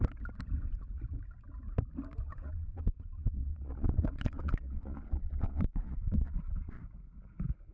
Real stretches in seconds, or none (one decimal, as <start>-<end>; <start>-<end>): 0.0-2.2; 6.8-7.7